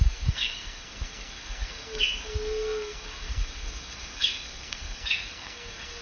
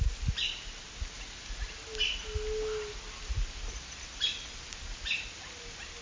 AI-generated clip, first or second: first